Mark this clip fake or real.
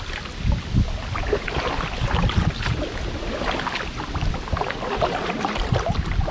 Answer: real